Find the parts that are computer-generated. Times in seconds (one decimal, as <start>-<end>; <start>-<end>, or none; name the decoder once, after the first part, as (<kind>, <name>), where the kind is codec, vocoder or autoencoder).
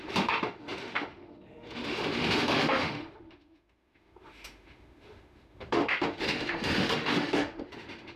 0.0-8.2 (autoencoder, DAC-VAE)